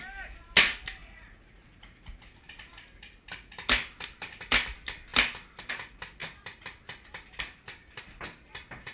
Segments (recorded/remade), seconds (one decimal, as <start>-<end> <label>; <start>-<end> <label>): 0.0-1.0 recorded; 1.0-2.4 remade; 2.4-8.9 recorded